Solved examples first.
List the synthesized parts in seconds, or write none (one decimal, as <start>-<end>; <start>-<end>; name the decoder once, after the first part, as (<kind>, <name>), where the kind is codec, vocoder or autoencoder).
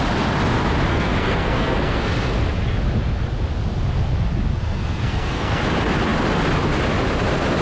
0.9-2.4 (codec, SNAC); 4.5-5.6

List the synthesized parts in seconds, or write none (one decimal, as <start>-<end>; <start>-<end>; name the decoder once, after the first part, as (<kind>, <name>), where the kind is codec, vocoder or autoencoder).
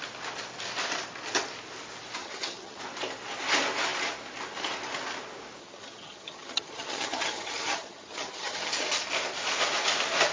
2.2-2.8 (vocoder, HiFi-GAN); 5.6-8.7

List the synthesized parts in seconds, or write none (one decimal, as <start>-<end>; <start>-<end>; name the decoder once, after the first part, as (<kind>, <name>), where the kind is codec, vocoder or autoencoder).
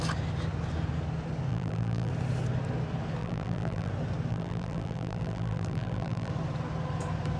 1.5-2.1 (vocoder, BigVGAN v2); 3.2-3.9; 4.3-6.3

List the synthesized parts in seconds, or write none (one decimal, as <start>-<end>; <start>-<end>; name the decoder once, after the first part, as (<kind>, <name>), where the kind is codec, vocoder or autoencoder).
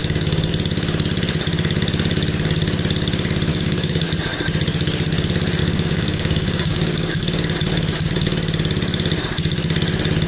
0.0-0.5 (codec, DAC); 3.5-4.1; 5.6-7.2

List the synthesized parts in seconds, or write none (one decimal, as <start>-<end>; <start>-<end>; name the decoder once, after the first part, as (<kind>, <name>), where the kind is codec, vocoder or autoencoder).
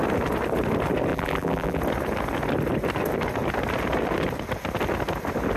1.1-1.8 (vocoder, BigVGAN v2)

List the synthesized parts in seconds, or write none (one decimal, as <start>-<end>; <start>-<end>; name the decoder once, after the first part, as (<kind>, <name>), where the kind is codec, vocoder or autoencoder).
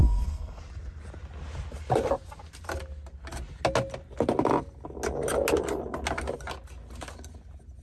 0.0-0.6 (codec, SNAC)